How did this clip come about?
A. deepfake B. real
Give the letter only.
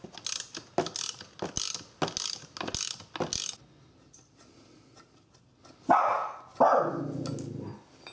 B